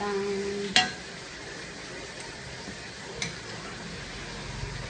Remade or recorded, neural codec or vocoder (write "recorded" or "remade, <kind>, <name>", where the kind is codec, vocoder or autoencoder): recorded